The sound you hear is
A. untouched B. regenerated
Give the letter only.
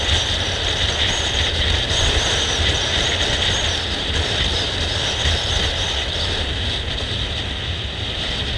A